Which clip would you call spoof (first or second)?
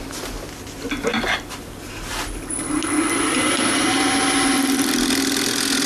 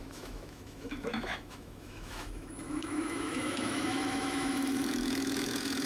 second